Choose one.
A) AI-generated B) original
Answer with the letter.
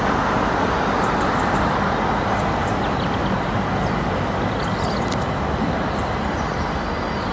B